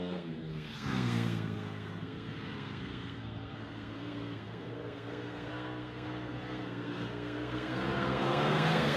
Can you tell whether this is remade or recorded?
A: remade